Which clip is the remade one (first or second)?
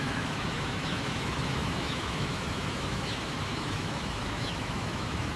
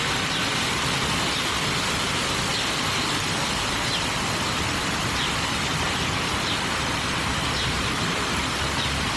first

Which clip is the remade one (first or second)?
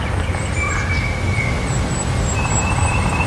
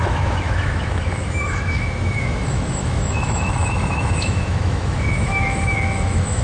second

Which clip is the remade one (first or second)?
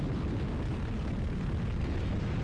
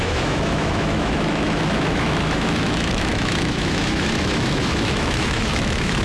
second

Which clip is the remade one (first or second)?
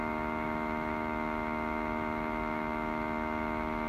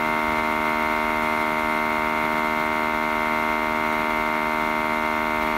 first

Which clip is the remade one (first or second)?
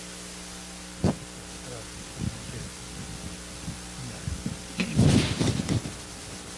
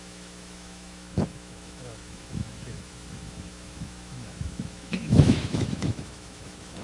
second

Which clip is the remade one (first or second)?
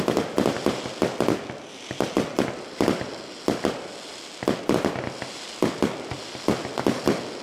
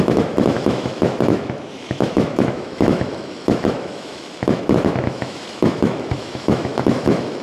second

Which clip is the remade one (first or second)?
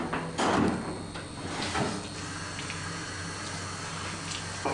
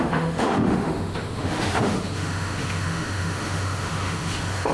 second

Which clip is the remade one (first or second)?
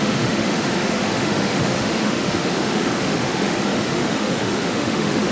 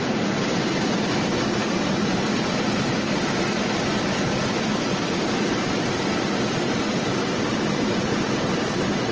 first